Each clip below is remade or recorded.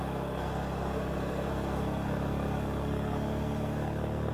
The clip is remade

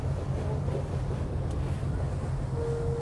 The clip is recorded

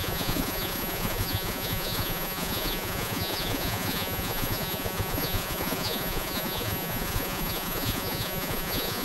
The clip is remade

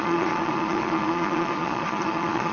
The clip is remade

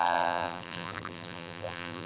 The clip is remade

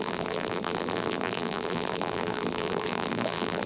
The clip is remade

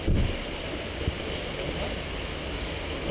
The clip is recorded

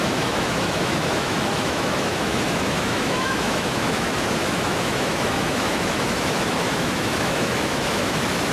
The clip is remade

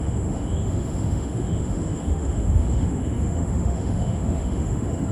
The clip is remade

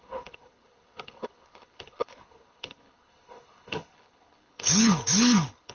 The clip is remade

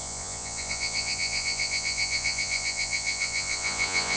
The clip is remade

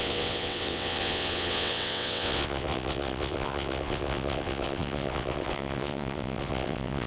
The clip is remade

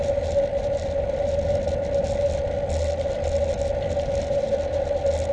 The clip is recorded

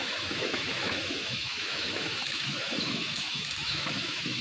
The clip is remade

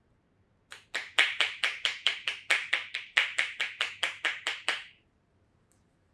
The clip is remade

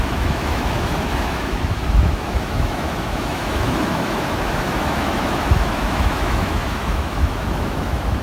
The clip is remade